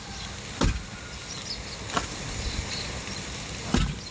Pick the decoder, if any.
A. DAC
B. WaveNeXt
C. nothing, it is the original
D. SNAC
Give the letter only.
C